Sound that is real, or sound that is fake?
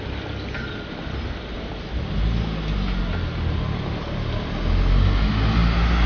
real